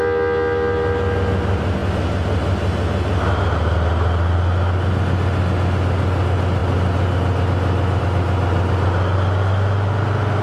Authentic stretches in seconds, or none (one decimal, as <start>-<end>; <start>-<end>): 0.0-10.4